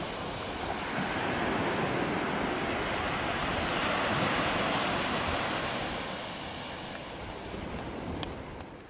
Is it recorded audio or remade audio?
recorded